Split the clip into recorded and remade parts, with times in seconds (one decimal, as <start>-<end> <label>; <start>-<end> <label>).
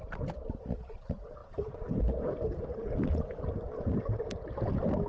0.0-5.1 recorded